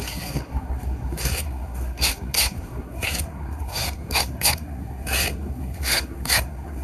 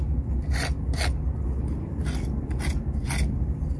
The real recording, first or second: second